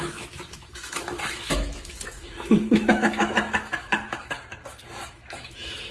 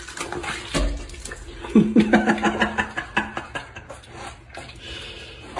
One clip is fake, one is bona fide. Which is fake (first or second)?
first